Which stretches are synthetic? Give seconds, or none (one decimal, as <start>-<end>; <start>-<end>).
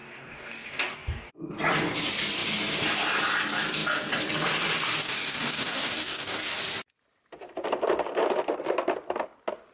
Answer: 0.0-1.3; 5.0-6.6